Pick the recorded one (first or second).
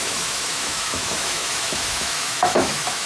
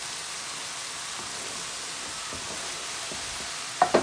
second